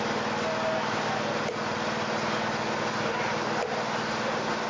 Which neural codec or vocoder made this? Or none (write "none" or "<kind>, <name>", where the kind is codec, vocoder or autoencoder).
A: none